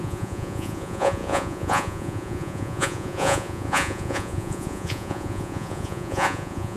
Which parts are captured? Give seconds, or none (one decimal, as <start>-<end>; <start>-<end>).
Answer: none